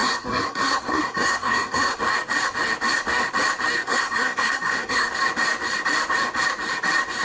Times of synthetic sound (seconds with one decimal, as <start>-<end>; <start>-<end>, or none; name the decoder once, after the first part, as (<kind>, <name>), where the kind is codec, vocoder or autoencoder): 0.0-2.0 (codec, SNAC); 3.8-5.1